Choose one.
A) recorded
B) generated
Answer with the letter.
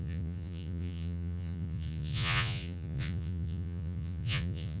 B